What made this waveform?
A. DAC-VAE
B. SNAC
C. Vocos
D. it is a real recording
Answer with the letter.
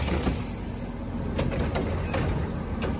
D